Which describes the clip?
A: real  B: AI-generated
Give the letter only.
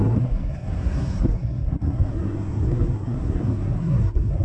B